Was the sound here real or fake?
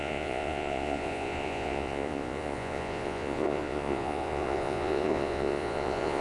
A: fake